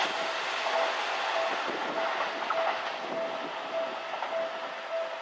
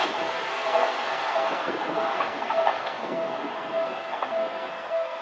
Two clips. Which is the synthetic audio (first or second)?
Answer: second